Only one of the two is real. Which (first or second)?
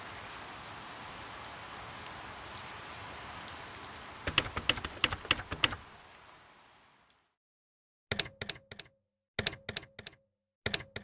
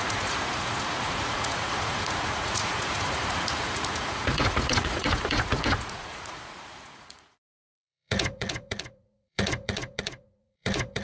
first